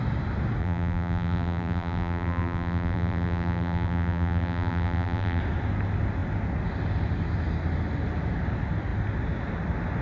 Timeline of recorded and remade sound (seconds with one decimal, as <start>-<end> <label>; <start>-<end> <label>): 0.0-0.6 recorded; 0.6-5.4 remade; 5.4-10.0 recorded